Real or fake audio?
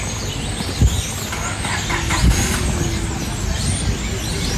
real